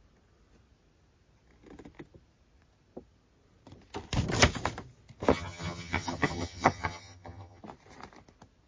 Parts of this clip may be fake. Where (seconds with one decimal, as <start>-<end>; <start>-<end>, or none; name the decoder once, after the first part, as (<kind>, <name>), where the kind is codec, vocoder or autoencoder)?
5.3-7.6 (vocoder, HiFi-GAN)